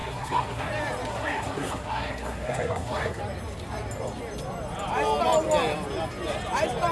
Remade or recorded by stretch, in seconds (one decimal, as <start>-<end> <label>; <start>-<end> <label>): 0.0-0.7 remade; 0.7-1.1 recorded; 1.1-3.2 remade; 3.2-6.9 recorded